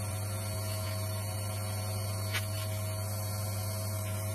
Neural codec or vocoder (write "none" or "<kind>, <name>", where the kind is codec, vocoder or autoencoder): none